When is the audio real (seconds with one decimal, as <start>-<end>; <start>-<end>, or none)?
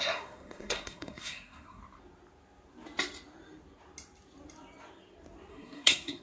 1.8-5.5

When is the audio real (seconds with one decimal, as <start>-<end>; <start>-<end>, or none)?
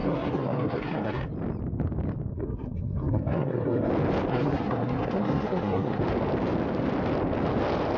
1.3-2.3; 3.9-4.3; 6.0-8.0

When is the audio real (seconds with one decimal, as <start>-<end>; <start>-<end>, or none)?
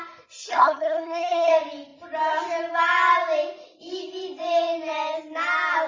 0.0-0.5; 1.5-5.9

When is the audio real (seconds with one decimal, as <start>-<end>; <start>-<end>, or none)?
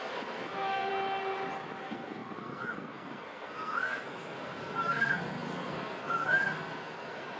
0.9-1.8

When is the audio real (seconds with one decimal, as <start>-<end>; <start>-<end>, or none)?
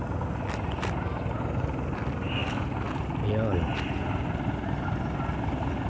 0.0-5.9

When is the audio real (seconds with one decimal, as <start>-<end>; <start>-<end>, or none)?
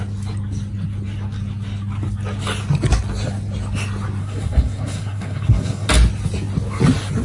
0.0-4.2; 5.9-7.2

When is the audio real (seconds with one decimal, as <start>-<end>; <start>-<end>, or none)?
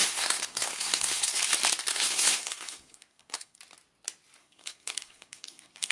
1.4-1.9; 3.6-4.4